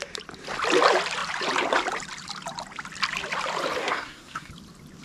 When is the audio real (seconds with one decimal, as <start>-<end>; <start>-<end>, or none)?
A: 0.0-3.8; 4.5-5.0